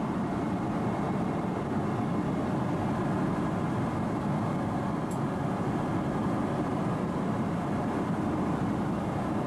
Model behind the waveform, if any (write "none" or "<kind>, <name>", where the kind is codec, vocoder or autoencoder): none